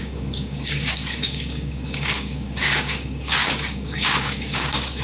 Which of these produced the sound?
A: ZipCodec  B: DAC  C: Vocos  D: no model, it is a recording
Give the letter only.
B